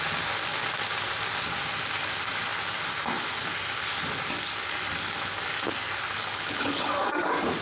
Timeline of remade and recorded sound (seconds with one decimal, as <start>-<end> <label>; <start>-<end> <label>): 0.0-6.2 recorded; 6.2-6.9 remade; 6.9-7.6 recorded